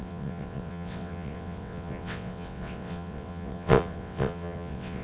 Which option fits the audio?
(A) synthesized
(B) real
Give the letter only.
A